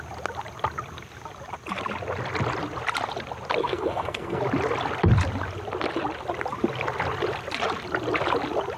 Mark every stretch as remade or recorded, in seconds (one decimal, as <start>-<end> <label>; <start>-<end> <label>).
0.0-3.6 recorded; 3.6-4.4 remade; 4.4-8.8 recorded